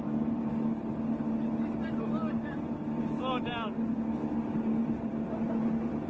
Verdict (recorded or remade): recorded